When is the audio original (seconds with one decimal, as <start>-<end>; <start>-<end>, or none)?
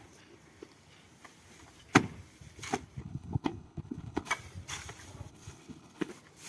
0.0-3.0; 4.3-5.3; 6.1-6.5